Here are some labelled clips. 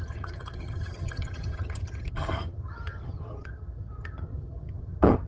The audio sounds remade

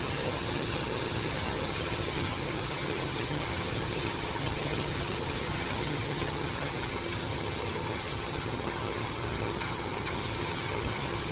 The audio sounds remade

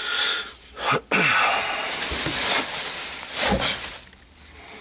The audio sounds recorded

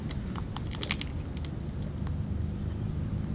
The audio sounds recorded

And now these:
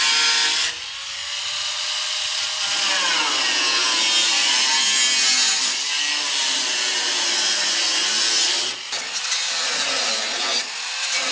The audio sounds recorded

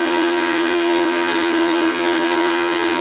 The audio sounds remade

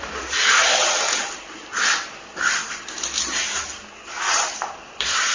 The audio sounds recorded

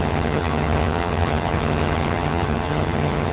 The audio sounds remade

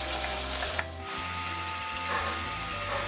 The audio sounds recorded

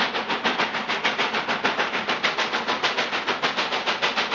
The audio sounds recorded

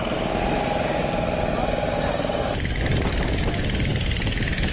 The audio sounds recorded